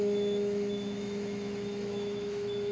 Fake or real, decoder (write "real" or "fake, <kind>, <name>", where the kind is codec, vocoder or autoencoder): fake, autoencoder, DAC-VAE